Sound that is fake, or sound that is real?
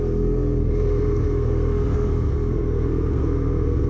fake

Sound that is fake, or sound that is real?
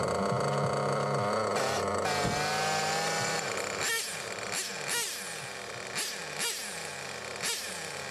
real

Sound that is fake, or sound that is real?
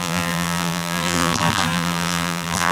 fake